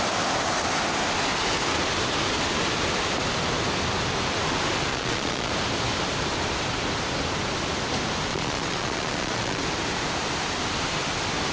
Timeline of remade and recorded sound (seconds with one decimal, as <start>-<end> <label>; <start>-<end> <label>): 0.0-4.9 recorded; 4.9-5.5 remade; 5.5-8.3 recorded; 8.3-9.6 remade; 9.6-11.5 recorded